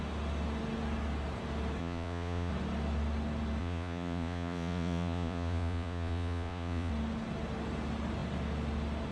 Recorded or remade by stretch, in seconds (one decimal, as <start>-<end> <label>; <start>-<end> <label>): 0.0-1.8 recorded; 1.8-2.5 remade; 2.5-3.6 recorded; 3.6-6.9 remade; 6.9-9.1 recorded